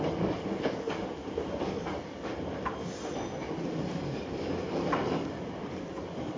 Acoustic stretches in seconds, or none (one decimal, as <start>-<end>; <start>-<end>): 1.1-1.6; 2.3-4.7